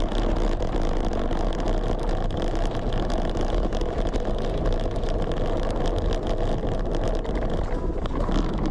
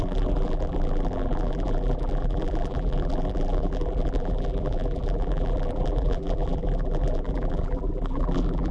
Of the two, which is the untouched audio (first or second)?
first